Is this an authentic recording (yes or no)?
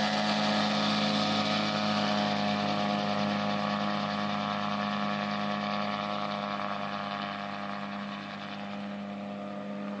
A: yes